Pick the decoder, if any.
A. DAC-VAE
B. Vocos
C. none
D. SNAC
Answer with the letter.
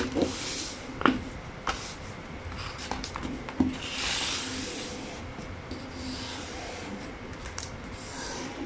C